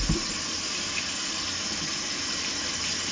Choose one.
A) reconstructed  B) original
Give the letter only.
B